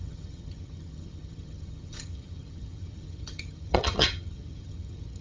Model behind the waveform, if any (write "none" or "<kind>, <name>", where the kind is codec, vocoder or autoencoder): vocoder, HiFi-GAN